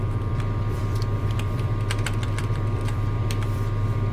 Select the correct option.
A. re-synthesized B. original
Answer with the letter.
A